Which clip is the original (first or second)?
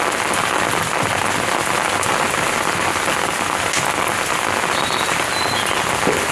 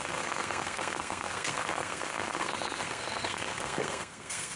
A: first